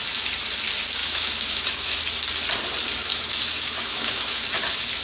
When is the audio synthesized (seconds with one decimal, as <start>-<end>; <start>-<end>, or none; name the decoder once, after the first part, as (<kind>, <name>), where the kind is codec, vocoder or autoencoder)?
1.0-2.0 (autoencoder, DAC-VAE); 3.1-4.4